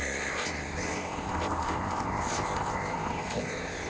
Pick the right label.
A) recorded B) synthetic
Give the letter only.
B